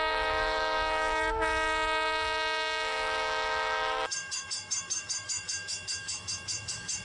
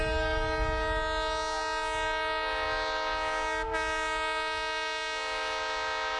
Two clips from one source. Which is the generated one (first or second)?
first